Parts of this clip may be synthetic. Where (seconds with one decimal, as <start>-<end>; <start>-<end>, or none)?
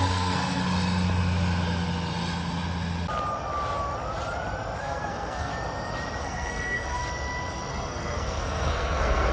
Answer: 0.0-0.6; 4.8-5.5; 6.2-7.0; 7.7-9.3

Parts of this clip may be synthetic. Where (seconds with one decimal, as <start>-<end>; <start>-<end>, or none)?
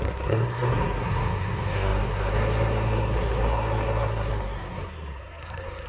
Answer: 0.0-5.9